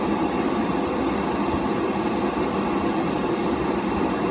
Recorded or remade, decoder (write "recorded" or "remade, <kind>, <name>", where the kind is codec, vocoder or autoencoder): recorded